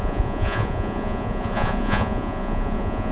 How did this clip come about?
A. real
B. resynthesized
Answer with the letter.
B